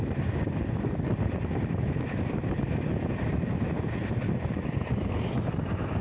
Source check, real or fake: real